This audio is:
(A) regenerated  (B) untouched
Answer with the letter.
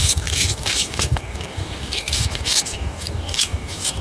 A